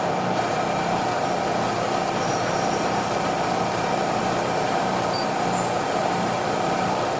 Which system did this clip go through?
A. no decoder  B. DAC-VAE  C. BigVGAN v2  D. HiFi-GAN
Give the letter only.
C